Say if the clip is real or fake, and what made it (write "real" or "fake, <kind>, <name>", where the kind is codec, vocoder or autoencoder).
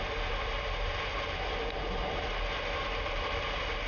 real